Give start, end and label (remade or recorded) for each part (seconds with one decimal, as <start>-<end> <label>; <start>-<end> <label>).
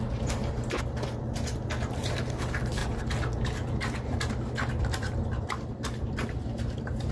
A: 0.0-0.4 remade; 0.4-1.9 recorded; 1.9-2.8 remade; 2.8-4.8 recorded; 4.8-7.1 remade